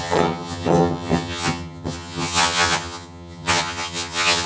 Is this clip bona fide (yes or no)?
no